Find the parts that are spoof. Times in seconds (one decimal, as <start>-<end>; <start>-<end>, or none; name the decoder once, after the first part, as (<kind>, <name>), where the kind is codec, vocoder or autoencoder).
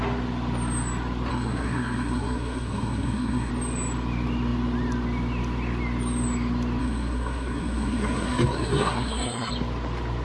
1.3-3.5 (codec, SNAC); 6.8-9.5